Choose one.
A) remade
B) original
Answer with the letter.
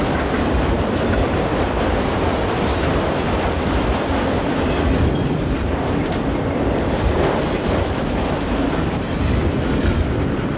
A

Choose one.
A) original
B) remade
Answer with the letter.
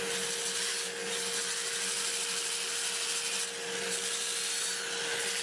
A